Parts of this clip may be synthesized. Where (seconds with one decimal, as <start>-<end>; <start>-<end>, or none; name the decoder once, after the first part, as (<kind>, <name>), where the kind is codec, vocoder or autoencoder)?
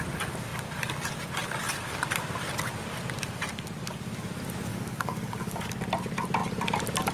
4.7-5.7 (codec, DAC)